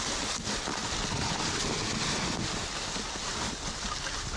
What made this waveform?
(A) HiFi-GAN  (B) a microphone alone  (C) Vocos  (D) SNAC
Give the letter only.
B